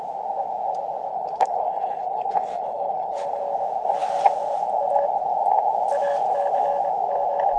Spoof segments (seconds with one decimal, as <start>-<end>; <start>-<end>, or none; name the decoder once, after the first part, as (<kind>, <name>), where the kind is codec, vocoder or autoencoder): 1.1-3.4 (codec, HILCodec)

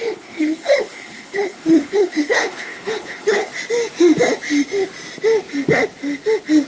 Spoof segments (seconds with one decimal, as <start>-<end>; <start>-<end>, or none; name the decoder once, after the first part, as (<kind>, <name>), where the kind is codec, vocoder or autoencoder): 0.0-3.5 (codec, HILCodec)

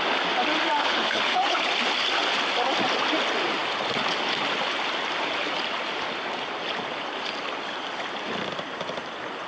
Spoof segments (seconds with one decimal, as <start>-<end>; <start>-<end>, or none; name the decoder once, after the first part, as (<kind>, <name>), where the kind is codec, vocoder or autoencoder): 0.8-1.7 (codec, HILCodec)

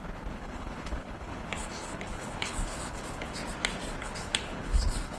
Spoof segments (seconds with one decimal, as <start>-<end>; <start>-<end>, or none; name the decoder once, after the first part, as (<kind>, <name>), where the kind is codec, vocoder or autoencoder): 0.0-3.4 (codec, HILCodec); 4.0-5.2

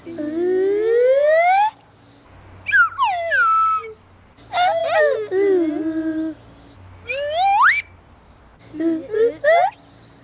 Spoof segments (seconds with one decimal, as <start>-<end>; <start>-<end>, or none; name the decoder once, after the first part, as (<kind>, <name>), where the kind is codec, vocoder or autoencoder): none

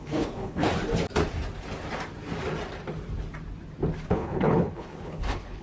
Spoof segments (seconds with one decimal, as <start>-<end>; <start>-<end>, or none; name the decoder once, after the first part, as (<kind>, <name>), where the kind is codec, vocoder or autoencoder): 0.0-0.7 (codec, HILCodec); 4.1-5.6